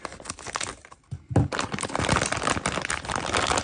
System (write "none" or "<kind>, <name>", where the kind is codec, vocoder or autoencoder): none